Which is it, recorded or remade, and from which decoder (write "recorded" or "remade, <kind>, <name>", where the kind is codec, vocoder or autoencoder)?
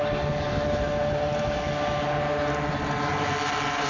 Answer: recorded